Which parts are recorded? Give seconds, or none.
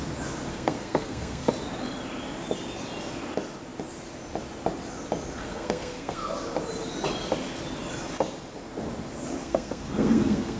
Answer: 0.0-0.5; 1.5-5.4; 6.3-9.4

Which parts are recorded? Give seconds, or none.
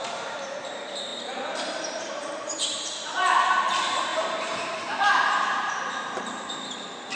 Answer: none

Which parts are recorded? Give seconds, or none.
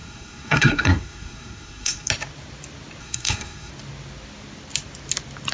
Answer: 2.1-3.0; 3.7-5.5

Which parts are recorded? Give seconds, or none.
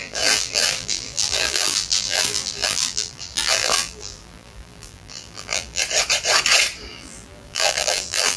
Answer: 5.8-6.9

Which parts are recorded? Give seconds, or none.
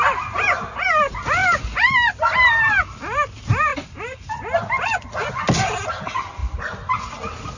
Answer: 0.0-7.6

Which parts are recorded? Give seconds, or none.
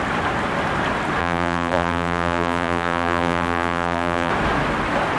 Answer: 0.0-1.2; 4.3-5.2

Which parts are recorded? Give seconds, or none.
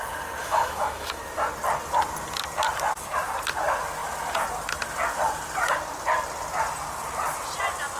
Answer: 0.0-0.4; 1.2-8.0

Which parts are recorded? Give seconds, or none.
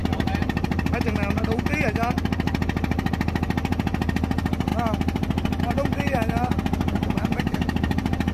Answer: 0.0-8.3